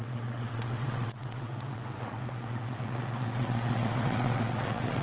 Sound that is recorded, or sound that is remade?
remade